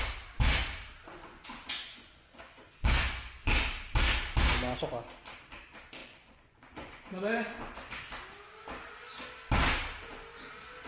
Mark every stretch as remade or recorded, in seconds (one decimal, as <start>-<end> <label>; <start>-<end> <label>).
0.0-1.1 recorded; 1.1-3.5 remade; 3.5-6.0 recorded; 6.0-7.9 remade; 7.9-10.9 recorded